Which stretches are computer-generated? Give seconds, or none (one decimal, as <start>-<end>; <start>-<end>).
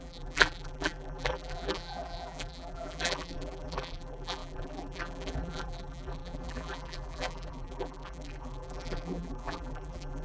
0.0-10.2